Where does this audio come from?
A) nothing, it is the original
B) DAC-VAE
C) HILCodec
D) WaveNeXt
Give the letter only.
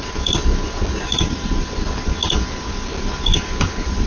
A